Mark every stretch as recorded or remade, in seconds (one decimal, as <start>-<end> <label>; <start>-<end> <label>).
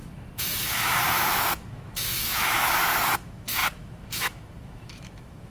0.0-5.5 remade